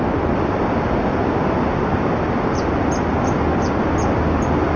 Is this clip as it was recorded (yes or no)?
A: yes